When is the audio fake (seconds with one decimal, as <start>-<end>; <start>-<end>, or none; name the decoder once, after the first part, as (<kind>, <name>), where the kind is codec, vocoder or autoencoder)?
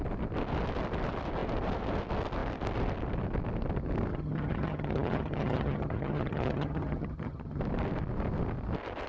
4.1-7.6 (vocoder, HiFi-GAN)